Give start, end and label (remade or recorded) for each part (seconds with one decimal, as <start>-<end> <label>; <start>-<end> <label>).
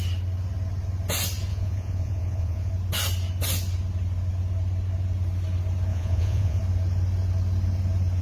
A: 0.0-1.5 recorded; 1.5-2.7 remade; 2.7-5.9 recorded; 5.9-6.6 remade; 6.6-8.2 recorded